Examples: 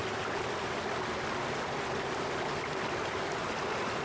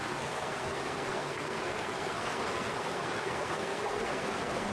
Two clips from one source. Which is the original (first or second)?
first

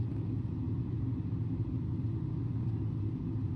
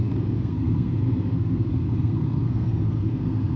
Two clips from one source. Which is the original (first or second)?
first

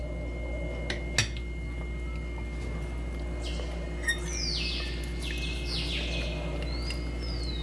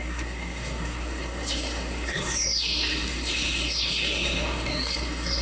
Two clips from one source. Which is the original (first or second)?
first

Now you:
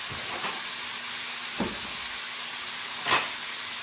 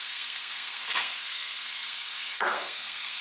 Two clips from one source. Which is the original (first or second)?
first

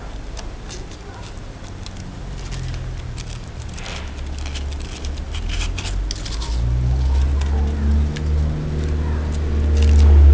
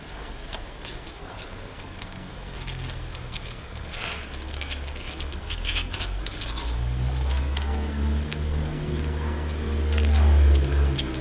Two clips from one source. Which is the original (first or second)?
first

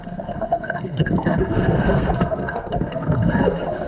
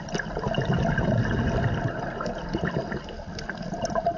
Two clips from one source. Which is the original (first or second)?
second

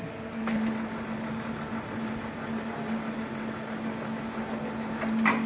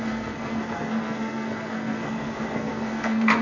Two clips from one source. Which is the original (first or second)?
first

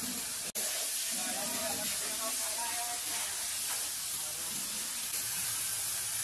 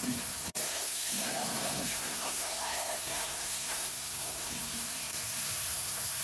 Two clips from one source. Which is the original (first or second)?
first